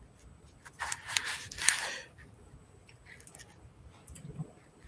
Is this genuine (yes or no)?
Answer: yes